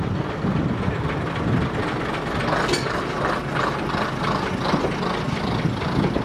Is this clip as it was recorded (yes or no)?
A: yes